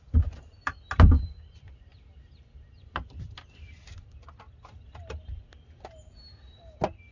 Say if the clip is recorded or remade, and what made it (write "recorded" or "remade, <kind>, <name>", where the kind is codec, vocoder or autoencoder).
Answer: recorded